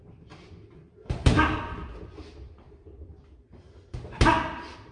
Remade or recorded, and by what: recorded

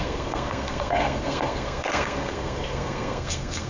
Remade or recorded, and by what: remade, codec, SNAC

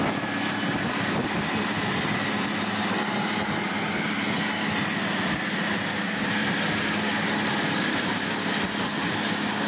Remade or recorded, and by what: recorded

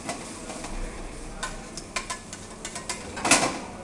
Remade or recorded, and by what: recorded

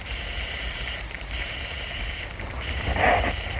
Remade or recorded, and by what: recorded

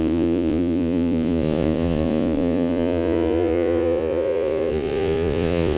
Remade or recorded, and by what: remade, vocoder, Vocos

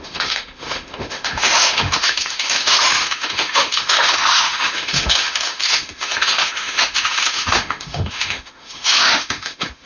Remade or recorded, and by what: remade, autoencoder, DAC-VAE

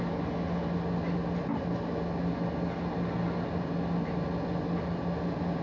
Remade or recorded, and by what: recorded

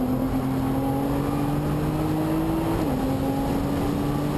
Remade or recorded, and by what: recorded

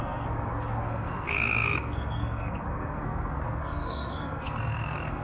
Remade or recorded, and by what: remade, codec, SNAC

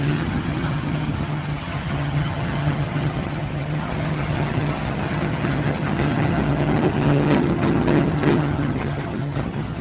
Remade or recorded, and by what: remade, vocoder, HiFi-GAN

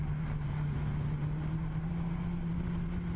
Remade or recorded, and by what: recorded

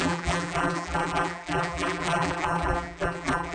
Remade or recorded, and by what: remade, vocoder, BigVGAN v2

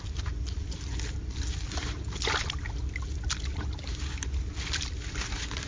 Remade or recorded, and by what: recorded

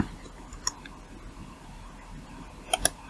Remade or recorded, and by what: recorded